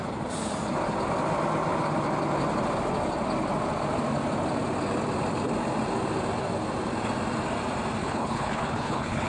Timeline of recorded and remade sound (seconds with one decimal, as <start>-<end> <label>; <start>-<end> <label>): 0.0-8.0 recorded; 8.0-9.3 remade